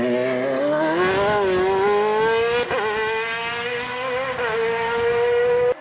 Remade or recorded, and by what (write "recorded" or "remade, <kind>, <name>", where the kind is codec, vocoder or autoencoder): recorded